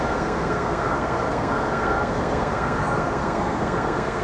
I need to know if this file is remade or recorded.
remade